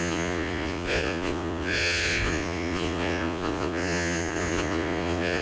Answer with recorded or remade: remade